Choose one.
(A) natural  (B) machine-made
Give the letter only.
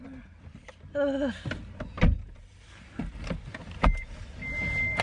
A